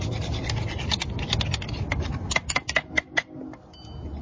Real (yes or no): yes